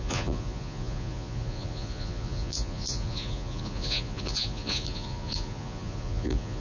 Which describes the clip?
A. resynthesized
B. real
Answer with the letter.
A